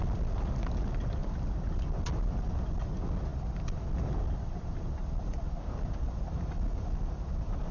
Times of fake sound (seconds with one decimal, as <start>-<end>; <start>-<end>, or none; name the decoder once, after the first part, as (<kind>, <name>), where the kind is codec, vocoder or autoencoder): 1.2-2.6 (vocoder, BigVGAN v2); 3.3-5.8